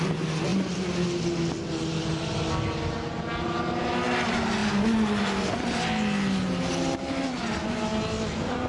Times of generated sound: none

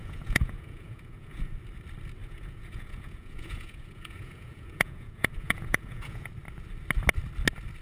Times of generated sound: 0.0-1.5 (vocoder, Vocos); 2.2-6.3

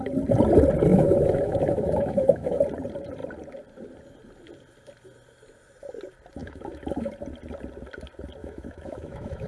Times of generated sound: 0.9-2.6 (autoencoder, DAC-VAE); 6.4-7.1; 8.4-9.5